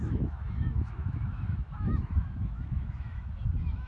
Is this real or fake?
fake